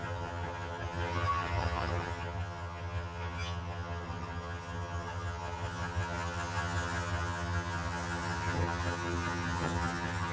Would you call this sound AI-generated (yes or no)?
yes